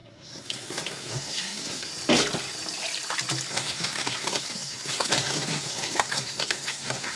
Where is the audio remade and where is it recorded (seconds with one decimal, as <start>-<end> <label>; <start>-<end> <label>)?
0.0-1.9 remade; 1.9-3.5 recorded; 3.5-7.2 remade